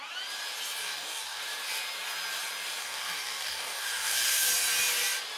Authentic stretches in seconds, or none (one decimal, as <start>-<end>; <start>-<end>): 0.0-0.8; 1.4-2.8; 4.5-5.4

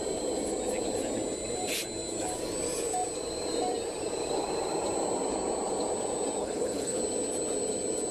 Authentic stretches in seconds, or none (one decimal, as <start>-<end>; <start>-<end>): 0.0-6.4; 7.0-8.1

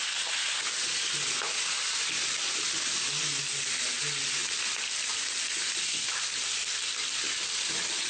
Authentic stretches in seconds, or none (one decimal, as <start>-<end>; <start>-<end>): 0.0-8.1

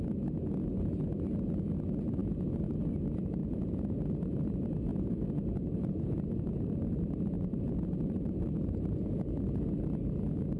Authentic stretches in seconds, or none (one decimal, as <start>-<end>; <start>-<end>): 0.0-3.4; 3.9-4.9; 9.6-10.6